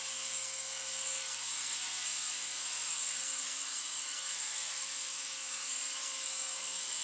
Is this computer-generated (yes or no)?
yes